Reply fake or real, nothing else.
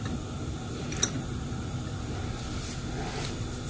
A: real